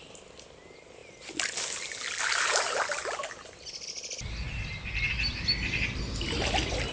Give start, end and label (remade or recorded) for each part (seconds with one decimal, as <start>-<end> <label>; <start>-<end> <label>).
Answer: 0.0-6.9 recorded